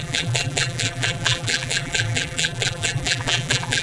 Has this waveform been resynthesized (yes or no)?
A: yes